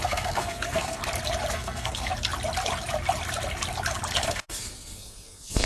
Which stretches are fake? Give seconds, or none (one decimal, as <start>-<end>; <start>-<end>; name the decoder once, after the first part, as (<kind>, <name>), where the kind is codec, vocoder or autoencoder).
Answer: 0.0-1.0 (codec, SNAC); 1.5-2.1; 4.2-5.7